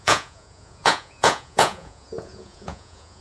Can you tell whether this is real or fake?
fake